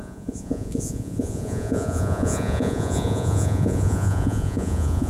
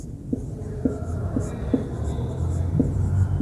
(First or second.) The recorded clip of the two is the second